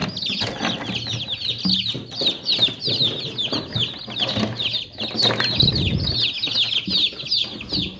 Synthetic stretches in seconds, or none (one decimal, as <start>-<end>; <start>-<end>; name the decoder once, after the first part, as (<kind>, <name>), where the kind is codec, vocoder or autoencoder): none